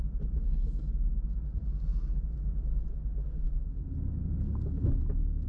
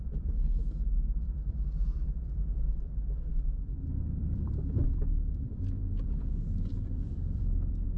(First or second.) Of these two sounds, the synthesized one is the second